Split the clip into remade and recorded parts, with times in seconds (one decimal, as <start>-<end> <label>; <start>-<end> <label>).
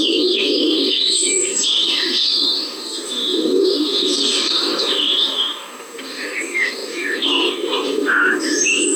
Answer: 0.0-9.0 remade